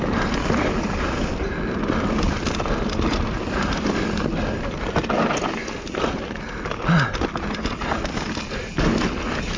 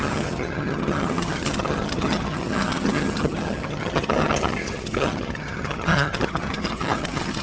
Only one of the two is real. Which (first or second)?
first